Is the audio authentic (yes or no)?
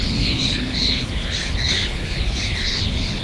no